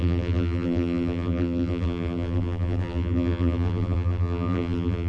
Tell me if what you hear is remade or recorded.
remade